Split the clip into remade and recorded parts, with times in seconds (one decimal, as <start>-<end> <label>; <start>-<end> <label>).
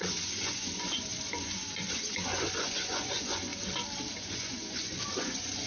0.0-3.5 remade; 3.5-4.2 recorded; 4.2-5.7 remade